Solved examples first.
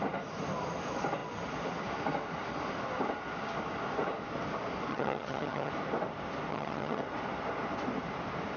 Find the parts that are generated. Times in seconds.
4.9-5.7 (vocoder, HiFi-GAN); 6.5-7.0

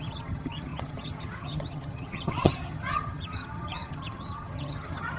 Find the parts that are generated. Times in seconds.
0.0-5.2 (vocoder, HiFi-GAN)

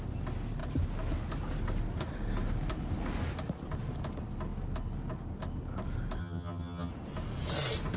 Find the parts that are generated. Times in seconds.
6.2-6.9 (vocoder, HiFi-GAN)